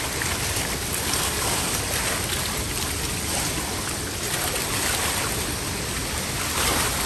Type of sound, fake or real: real